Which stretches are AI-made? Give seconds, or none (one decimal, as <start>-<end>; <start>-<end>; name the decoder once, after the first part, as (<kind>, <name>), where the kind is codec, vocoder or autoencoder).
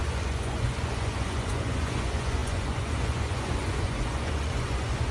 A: 0.0-5.1 (vocoder, Vocos)